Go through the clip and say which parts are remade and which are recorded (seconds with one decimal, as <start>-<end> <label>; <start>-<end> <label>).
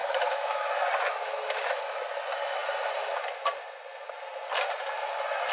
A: 0.0-0.7 remade; 0.7-1.2 recorded; 1.2-2.0 remade; 2.0-5.5 recorded